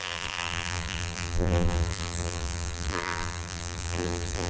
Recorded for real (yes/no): no